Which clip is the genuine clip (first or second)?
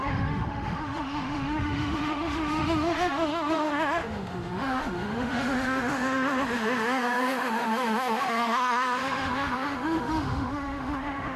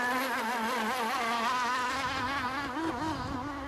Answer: second